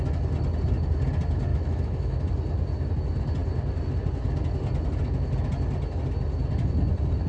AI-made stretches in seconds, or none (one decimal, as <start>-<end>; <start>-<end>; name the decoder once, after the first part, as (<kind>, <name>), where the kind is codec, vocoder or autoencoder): 1.5-2.1 (autoencoder, DAC-VAE)